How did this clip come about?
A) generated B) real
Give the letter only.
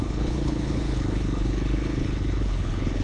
A